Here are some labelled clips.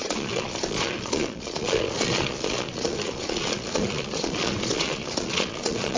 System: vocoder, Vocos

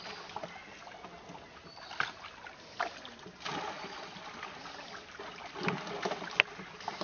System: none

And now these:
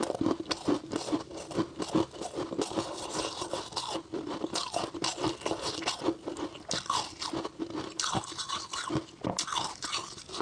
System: none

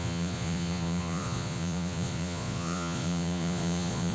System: vocoder, Vocos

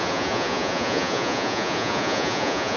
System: vocoder, Vocos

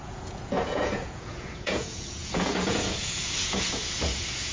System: vocoder, Vocos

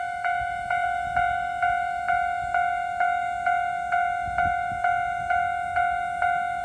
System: vocoder, Vocos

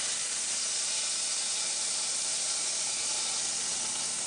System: none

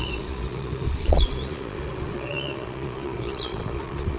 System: vocoder, Vocos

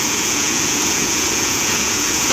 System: vocoder, Vocos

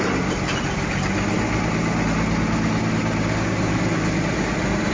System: none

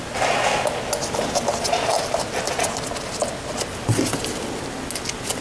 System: none